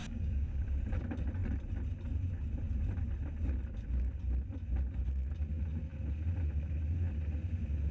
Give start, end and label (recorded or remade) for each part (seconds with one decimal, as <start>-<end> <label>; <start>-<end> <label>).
0.0-0.6 remade; 0.6-7.9 recorded